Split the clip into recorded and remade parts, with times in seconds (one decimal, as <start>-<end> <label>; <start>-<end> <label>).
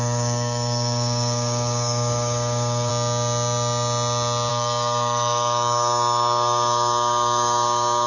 0.0-2.9 remade; 2.9-4.5 recorded; 4.5-8.1 remade